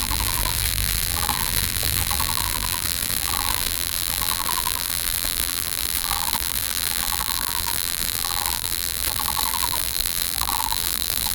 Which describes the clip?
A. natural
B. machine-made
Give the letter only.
B